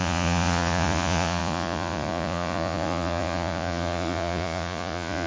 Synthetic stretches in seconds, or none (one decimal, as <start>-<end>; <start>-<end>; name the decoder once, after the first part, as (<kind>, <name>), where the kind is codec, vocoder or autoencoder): 0.0-5.3 (vocoder, Vocos)